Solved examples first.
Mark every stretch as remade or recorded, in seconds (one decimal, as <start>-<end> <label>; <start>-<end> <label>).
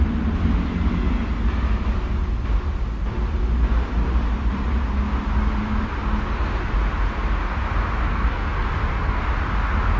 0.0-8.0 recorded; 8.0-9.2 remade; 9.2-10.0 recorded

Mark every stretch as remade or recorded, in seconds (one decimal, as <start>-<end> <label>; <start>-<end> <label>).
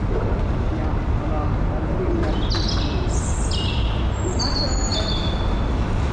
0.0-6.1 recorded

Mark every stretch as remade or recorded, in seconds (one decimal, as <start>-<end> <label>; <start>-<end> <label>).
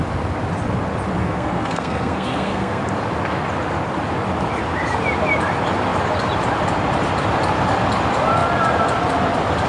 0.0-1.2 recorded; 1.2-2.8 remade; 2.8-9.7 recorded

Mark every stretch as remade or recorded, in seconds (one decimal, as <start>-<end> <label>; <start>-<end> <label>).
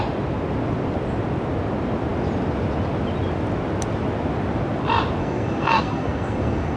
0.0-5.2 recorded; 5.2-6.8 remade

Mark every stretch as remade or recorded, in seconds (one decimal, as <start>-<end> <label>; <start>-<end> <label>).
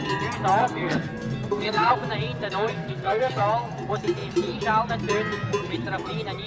0.0-0.6 recorded; 0.6-1.9 remade; 1.9-2.7 recorded; 2.7-3.4 remade; 3.4-6.5 recorded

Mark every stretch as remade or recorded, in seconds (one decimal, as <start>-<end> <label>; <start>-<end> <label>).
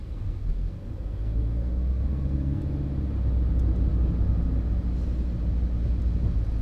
0.0-2.6 remade; 2.6-6.6 recorded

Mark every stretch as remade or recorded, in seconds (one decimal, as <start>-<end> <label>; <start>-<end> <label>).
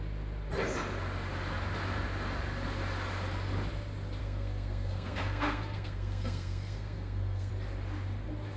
0.0-4.2 recorded; 4.2-7.5 remade; 7.5-8.6 recorded